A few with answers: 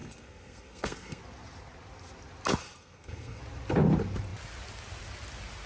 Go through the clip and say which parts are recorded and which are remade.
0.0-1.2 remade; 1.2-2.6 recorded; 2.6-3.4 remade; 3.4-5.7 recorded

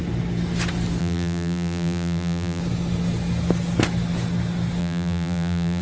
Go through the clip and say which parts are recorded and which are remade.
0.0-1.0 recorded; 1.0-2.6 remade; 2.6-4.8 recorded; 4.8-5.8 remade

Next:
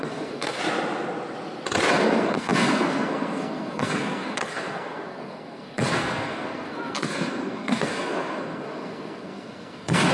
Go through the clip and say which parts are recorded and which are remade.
0.0-0.6 remade; 0.6-1.9 recorded; 1.9-10.1 remade

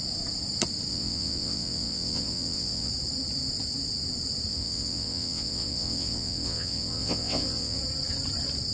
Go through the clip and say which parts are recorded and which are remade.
0.0-0.9 recorded; 0.9-2.9 remade; 2.9-4.5 recorded; 4.5-7.8 remade; 7.8-8.7 recorded

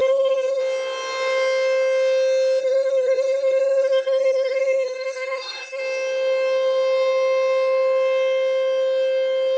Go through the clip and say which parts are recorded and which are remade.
0.0-0.6 remade; 0.6-2.6 recorded; 2.6-5.8 remade; 5.8-9.6 recorded